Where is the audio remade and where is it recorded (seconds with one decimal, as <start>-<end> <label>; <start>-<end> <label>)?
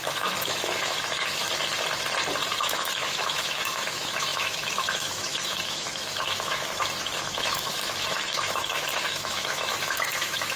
0.0-1.4 remade; 1.4-2.6 recorded; 2.6-10.6 remade